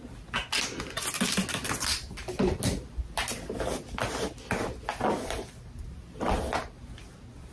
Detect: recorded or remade recorded